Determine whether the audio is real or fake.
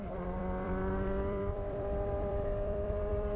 fake